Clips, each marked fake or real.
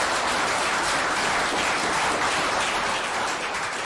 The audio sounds fake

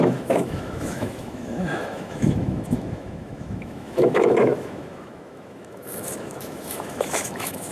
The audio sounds fake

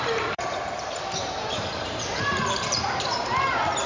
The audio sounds fake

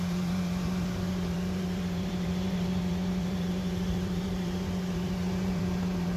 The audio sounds fake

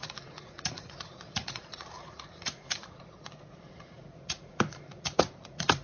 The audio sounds fake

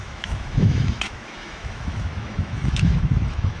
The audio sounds fake